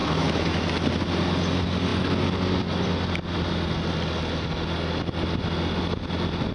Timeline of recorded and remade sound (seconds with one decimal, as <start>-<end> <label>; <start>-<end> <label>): 0.0-0.7 remade; 0.7-6.5 recorded